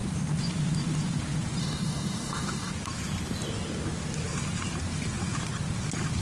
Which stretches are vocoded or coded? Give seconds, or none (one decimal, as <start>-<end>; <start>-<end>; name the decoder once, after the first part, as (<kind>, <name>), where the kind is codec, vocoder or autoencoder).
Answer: 1.6-2.7 (codec, DAC)